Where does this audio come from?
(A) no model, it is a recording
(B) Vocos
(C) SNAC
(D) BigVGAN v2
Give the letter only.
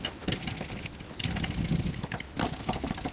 A